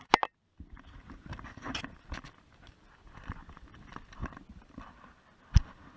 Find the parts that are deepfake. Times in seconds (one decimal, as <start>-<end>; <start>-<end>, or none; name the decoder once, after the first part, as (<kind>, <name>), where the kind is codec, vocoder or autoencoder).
1.6-3.6 (vocoder, BigVGAN v2); 4.2-5.0